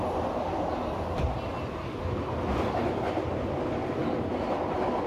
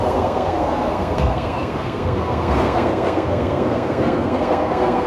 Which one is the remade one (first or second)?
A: second